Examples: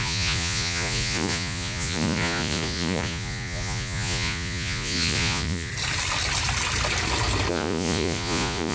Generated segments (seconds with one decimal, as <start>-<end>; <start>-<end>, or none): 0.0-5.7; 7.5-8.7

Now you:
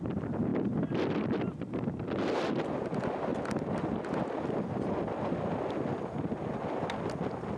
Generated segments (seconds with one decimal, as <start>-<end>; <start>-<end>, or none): none

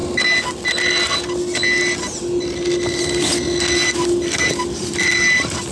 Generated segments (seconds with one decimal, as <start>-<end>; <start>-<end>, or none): none